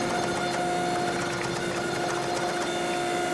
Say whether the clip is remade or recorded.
recorded